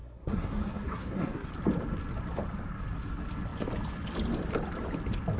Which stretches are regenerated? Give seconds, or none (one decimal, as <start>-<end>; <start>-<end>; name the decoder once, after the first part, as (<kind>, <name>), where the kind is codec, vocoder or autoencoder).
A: 0.0-1.5 (codec, SNAC)